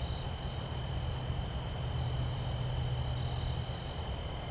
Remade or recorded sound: recorded